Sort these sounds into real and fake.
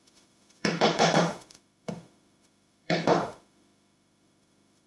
fake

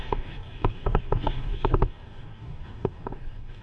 fake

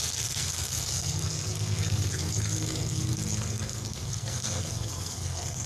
fake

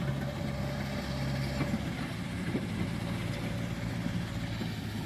real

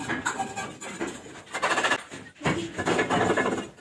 real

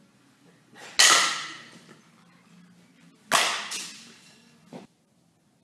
real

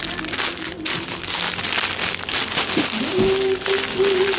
real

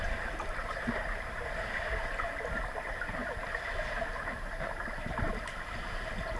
real